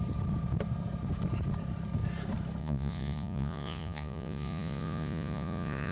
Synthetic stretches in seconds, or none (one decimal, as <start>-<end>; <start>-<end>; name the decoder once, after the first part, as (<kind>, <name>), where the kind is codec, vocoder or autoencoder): 2.6-5.9 (vocoder, Vocos)